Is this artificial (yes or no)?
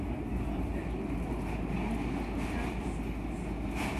no